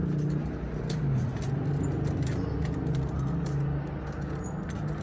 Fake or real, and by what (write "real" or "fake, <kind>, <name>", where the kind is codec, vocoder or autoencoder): real